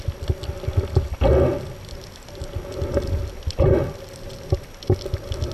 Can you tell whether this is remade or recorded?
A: recorded